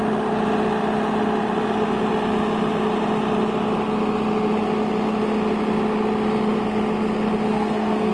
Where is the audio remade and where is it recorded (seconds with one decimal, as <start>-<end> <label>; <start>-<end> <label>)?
0.0-7.5 recorded; 7.5-8.1 remade